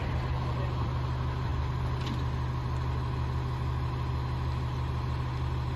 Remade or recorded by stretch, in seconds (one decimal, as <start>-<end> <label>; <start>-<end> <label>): 0.0-5.8 recorded